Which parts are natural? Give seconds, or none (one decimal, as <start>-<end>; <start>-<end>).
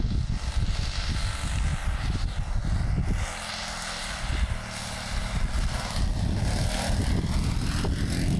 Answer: 0.0-1.7; 2.5-8.4